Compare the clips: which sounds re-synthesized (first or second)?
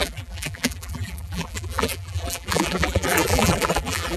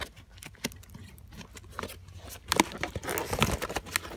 first